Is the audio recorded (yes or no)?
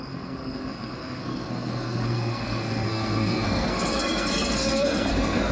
no